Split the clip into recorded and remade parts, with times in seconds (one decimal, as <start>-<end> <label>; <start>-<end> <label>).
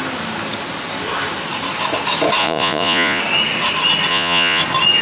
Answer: 0.0-2.4 recorded; 2.4-3.2 remade; 3.2-4.1 recorded; 4.1-4.6 remade; 4.6-5.0 recorded